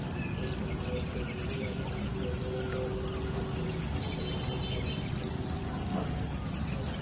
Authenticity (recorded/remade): recorded